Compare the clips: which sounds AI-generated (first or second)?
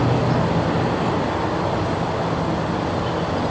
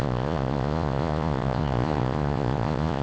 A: second